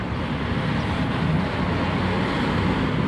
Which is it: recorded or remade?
recorded